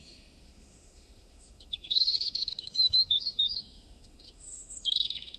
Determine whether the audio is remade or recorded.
remade